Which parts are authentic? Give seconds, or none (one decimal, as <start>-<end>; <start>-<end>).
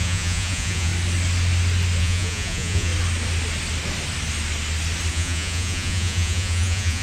0.9-2.0; 2.9-5.1